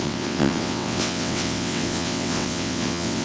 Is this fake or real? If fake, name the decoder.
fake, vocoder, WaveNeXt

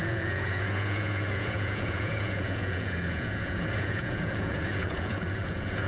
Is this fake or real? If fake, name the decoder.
fake, vocoder, Vocos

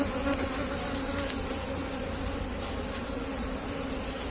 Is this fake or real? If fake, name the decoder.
real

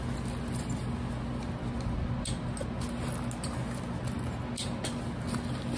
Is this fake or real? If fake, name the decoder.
real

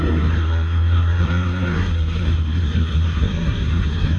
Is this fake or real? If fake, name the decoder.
fake, codec, SNAC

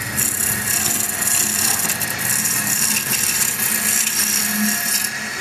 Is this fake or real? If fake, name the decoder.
real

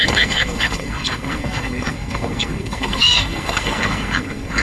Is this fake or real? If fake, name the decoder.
fake, codec, SNAC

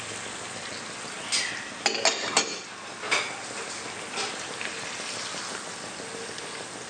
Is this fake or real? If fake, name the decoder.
real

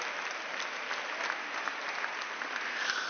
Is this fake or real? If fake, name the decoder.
real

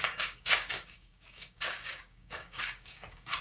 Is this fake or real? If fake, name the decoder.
fake, codec, DAC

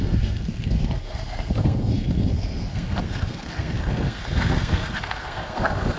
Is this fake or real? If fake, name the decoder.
fake, codec, SNAC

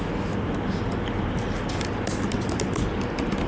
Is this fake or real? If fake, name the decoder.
real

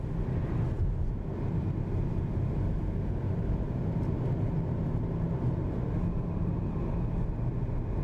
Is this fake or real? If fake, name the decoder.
real